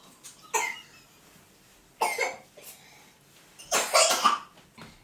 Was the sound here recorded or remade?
recorded